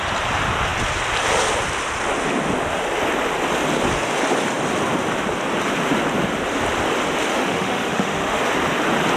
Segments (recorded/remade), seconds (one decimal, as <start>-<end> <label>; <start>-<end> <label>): 0.0-7.3 recorded; 7.3-8.4 remade; 8.4-9.2 recorded